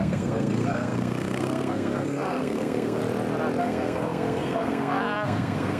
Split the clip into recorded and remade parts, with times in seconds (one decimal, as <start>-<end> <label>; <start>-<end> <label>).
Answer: 0.0-3.0 remade; 3.0-3.6 recorded; 3.6-5.8 remade